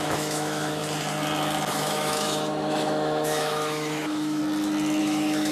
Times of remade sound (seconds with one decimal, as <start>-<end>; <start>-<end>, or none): 0.0-0.8; 1.7-4.4; 5.0-5.5